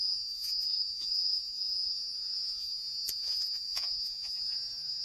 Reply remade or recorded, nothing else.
remade